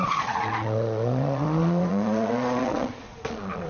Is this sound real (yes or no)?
no